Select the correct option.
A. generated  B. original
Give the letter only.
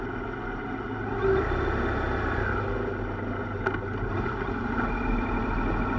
B